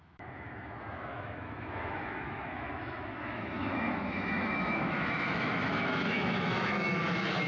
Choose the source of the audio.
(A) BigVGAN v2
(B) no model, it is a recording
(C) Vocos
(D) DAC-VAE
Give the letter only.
D